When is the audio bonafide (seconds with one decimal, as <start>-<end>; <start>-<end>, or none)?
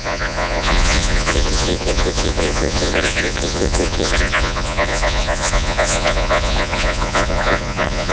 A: none